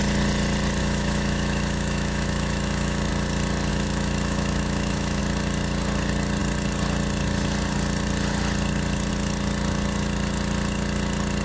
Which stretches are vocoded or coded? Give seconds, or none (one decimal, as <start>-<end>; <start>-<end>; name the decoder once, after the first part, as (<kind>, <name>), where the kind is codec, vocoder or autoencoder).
0.8-3.1 (autoencoder, DAC-VAE); 3.7-5.2